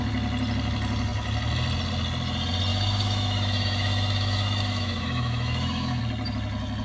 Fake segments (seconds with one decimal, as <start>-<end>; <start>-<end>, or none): 2.7-6.0